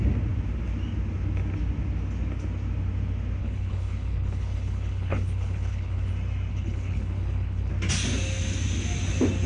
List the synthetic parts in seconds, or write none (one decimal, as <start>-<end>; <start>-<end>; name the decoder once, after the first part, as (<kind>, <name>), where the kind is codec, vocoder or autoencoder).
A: 3.4-6.1 (codec, HILCodec); 6.5-7.7